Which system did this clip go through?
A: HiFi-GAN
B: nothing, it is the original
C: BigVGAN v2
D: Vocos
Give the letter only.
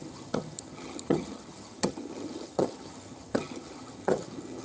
A